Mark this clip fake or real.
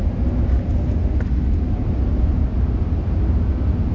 real